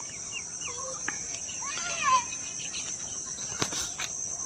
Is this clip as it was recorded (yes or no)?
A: yes